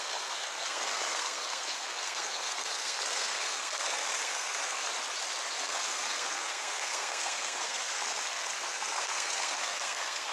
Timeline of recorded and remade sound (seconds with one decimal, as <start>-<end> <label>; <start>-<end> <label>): 0.0-4.9 remade; 4.9-5.6 recorded; 5.6-10.3 remade